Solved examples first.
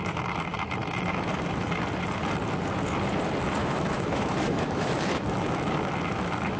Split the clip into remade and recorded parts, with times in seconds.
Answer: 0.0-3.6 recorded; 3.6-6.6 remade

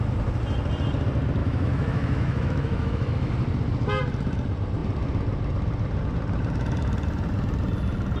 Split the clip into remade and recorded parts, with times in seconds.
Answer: 0.0-1.4 recorded; 1.4-3.3 remade; 3.3-8.2 recorded

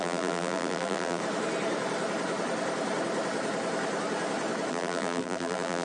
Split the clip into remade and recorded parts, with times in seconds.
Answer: 0.0-1.2 remade; 1.2-4.7 recorded; 4.7-5.8 remade

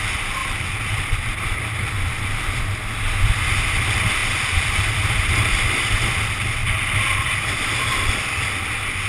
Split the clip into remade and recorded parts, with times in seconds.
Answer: 0.0-0.4 recorded; 0.4-2.1 remade; 2.1-4.2 recorded; 4.2-5.2 remade; 5.2-6.6 recorded; 6.6-7.5 remade; 7.5-9.1 recorded

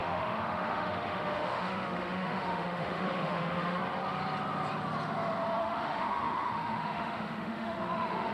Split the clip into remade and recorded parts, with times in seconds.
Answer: 0.0-3.8 remade; 3.8-5.6 recorded; 5.6-8.3 remade

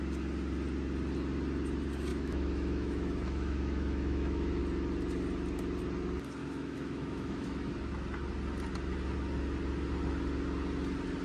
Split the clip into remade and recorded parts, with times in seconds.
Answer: 0.0-2.1 recorded; 2.1-4.6 remade; 4.6-6.4 recorded; 6.4-7.7 remade; 7.7-11.2 recorded

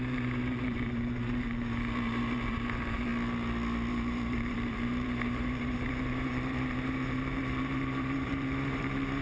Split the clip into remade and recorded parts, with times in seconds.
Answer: 0.0-3.1 remade; 3.1-3.9 recorded; 3.9-9.2 remade